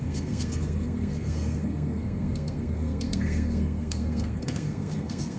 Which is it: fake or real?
fake